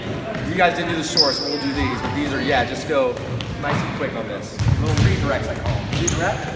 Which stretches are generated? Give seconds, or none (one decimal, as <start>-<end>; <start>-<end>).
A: none